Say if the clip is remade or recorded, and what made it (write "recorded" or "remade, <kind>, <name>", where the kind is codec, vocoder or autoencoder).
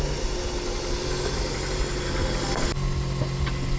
recorded